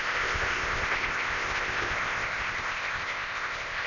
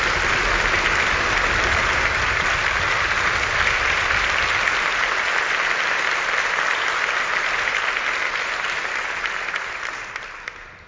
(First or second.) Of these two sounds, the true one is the second